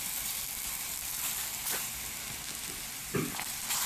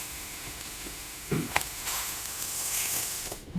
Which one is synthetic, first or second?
second